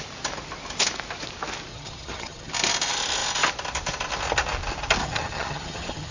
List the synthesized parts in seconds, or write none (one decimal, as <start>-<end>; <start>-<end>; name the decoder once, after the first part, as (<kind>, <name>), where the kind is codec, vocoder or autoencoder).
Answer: 1.7-2.5 (vocoder, HiFi-GAN); 5.0-6.1